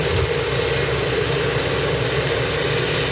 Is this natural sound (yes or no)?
yes